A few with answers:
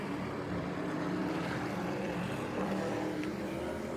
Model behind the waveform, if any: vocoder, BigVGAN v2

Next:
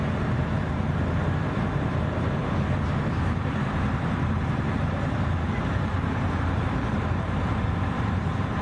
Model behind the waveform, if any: vocoder, BigVGAN v2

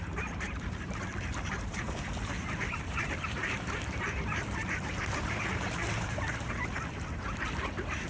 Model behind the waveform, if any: vocoder, BigVGAN v2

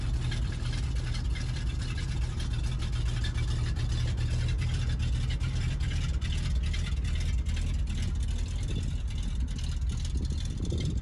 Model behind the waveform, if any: vocoder, BigVGAN v2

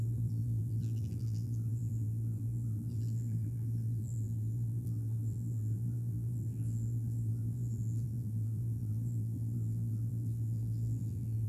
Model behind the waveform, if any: vocoder, BigVGAN v2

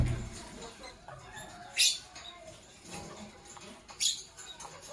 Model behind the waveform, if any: none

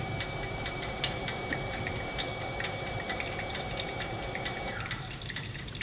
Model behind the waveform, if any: vocoder, BigVGAN v2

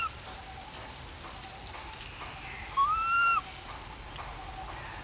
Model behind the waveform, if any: none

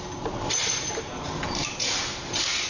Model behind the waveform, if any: vocoder, BigVGAN v2